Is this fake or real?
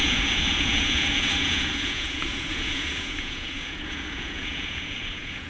fake